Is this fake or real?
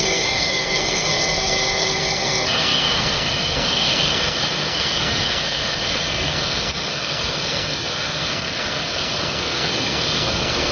fake